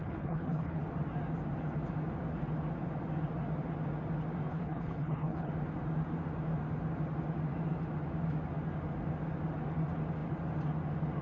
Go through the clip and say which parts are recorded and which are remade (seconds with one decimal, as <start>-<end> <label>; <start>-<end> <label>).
0.0-0.8 remade; 0.8-4.5 recorded; 4.5-5.5 remade; 5.5-11.2 recorded